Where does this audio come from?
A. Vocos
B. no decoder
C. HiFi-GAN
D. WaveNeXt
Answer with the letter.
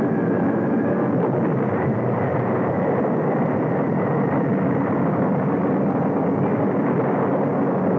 B